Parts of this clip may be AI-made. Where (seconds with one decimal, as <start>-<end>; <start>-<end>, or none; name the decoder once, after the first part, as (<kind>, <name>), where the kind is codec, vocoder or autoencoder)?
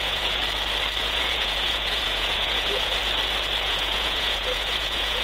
0.0-0.4 (vocoder, Vocos); 1.0-3.0; 3.6-5.2